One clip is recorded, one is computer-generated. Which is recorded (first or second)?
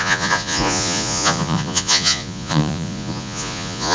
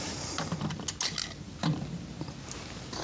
second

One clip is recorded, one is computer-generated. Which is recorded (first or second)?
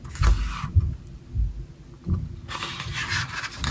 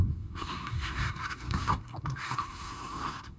first